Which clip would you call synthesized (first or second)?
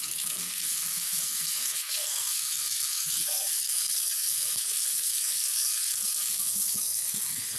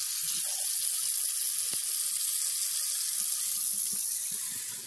first